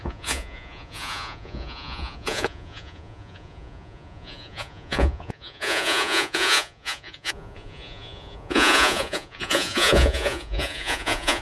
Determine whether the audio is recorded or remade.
remade